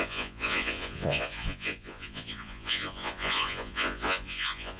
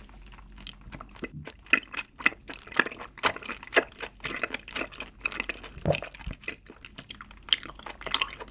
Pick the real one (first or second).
second